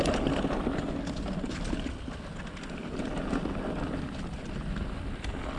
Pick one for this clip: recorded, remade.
recorded